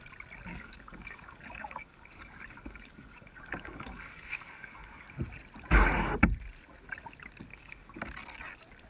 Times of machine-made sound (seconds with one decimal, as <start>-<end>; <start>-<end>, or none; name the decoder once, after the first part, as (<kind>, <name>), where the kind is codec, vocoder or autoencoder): 0.5-5.1 (codec, DAC); 7.5-8.0